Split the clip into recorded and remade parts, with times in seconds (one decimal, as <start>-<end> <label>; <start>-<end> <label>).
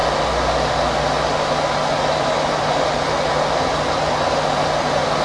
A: 0.0-5.2 recorded